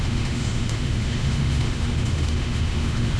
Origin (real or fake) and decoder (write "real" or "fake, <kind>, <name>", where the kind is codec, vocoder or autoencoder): fake, autoencoder, DAC-VAE